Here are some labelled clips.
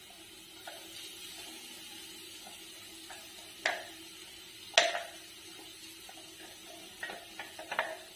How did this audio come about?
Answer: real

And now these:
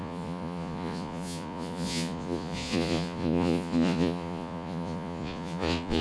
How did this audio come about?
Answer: fake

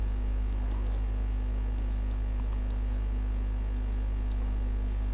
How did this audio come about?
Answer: real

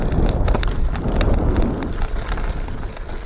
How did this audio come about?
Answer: real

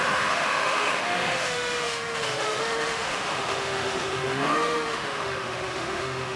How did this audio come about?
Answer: fake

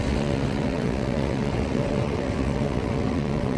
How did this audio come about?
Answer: fake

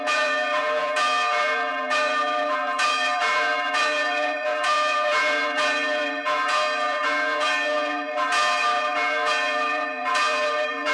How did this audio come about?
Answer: fake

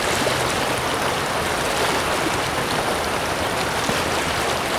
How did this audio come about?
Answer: real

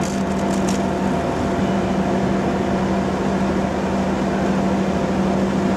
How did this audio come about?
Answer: real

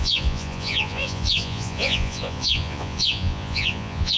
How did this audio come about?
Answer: fake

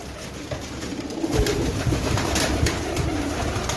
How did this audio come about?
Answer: real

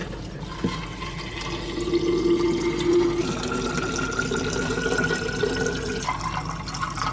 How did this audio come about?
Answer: real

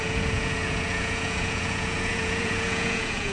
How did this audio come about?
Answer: fake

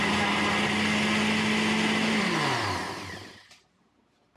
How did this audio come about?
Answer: real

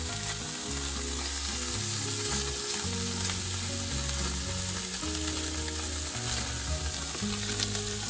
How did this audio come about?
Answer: real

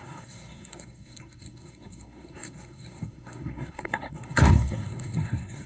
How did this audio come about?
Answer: fake